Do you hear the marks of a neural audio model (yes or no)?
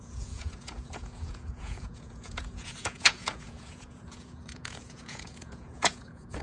yes